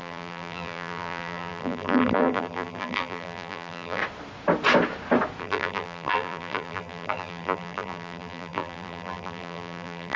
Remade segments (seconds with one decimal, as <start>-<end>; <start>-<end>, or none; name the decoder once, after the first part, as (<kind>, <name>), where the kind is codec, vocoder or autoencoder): 0.0-4.0 (vocoder, BigVGAN v2); 5.4-10.2

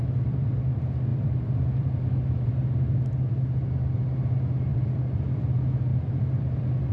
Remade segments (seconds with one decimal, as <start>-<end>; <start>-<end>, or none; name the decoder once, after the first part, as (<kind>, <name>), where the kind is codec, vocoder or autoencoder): 0.0-0.5 (vocoder, BigVGAN v2); 1.1-2.5; 4.7-5.4; 5.9-6.9

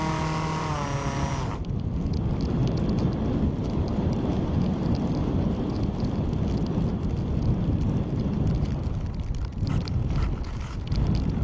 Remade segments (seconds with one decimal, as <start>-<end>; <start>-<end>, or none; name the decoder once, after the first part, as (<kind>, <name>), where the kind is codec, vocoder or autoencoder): 3.9-6.3 (vocoder, BigVGAN v2)

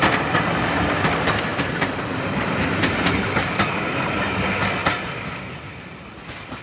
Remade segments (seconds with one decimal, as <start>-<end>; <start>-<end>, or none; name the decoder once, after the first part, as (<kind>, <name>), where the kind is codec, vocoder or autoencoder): 1.5-2.1 (vocoder, BigVGAN v2)

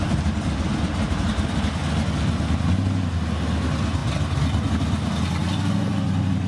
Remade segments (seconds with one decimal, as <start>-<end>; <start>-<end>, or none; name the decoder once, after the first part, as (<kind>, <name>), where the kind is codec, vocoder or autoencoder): none